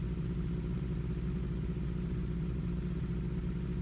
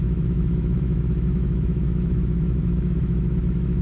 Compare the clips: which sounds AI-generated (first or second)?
second